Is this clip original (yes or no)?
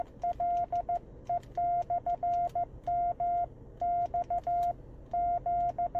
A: yes